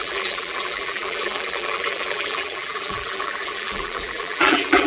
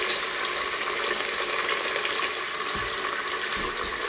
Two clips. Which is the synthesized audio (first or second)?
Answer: first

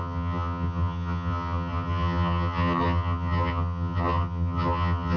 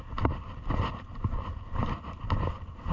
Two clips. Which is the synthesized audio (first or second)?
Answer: first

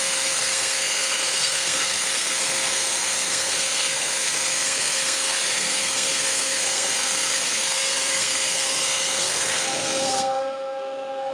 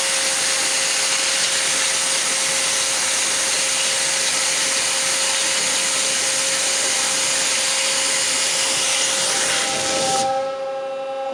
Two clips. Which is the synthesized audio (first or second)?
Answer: first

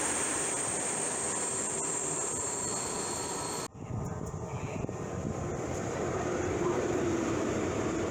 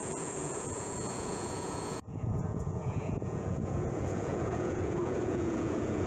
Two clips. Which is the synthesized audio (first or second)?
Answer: second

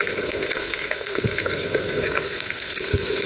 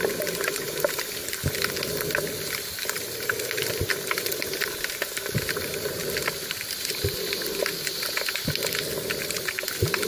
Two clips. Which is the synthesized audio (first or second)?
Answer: first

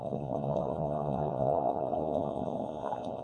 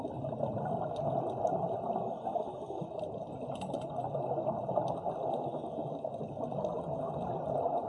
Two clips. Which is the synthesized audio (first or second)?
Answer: first